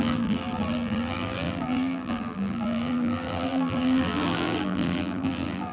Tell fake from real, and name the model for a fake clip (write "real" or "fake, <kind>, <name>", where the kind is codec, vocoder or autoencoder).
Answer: fake, vocoder, BigVGAN v2